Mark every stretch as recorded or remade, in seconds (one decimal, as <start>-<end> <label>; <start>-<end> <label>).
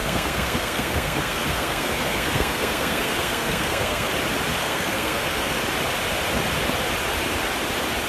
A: 0.0-4.1 remade; 4.1-4.6 recorded; 4.6-5.6 remade; 5.6-8.1 recorded